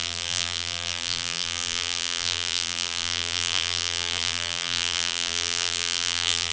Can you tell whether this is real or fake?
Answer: fake